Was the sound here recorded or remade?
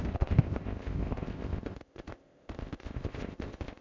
remade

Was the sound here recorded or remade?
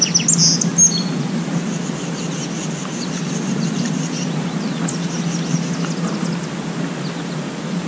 recorded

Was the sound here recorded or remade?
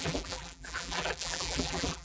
remade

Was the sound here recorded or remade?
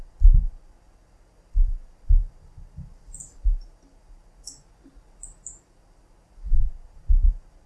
recorded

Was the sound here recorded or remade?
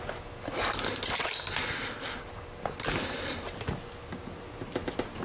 recorded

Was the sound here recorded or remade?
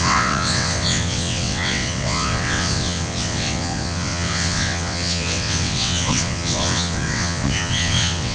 remade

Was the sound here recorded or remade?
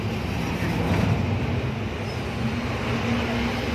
recorded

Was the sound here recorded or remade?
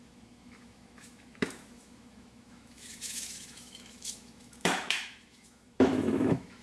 remade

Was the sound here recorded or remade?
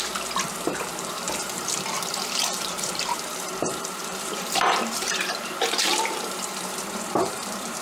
remade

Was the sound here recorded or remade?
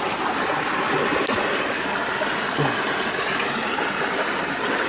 recorded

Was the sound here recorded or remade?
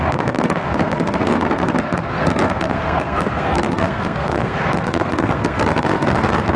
remade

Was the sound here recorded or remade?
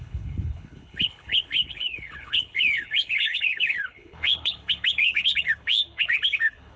remade